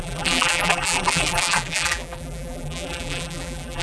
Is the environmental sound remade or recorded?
remade